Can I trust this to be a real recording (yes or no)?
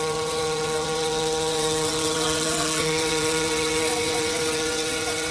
no